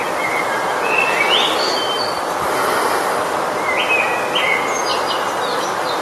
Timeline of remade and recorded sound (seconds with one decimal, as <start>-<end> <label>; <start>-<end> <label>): 0.0-4.9 recorded; 4.9-6.0 remade